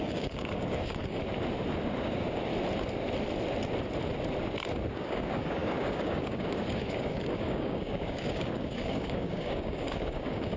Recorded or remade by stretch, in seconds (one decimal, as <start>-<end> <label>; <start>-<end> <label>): 0.0-1.2 remade; 1.2-2.0 recorded; 2.0-2.5 remade; 2.5-4.9 recorded; 4.9-10.6 remade